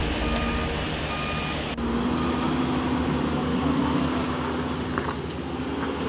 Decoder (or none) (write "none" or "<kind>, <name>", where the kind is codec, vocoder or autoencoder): none